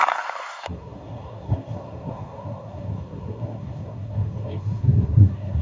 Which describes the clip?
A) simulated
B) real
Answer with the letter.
A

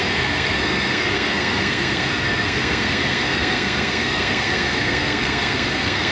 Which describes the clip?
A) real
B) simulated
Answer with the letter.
B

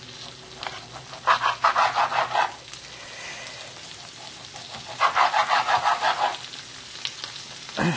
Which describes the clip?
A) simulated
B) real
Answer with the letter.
B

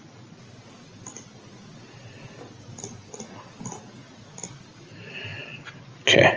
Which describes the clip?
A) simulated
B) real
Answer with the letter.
B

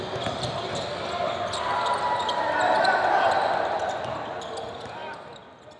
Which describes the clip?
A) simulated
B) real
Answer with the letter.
B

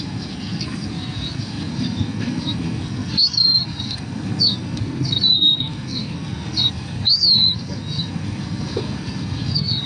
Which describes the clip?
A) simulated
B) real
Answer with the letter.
A